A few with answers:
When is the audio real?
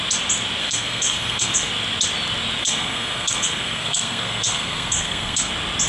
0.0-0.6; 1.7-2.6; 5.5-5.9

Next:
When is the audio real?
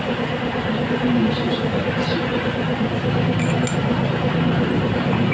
0.0-5.3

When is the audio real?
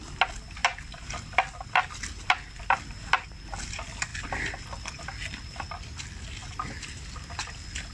0.0-7.9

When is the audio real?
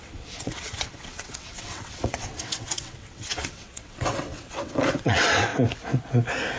5.5-6.6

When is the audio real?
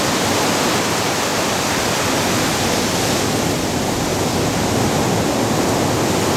0.0-6.4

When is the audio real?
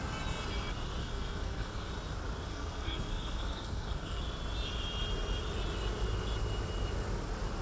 0.0-1.0; 1.9-2.5; 4.2-7.6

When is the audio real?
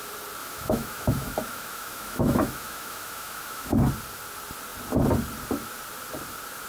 0.0-0.4; 3.8-6.7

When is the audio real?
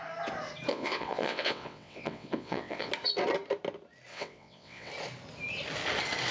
0.0-0.7; 2.9-4.1; 4.9-6.3